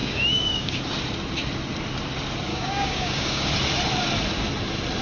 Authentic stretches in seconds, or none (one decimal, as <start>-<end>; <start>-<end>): 0.8-2.5; 3.5-5.0